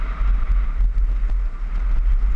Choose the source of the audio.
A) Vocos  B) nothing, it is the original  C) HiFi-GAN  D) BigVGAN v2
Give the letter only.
B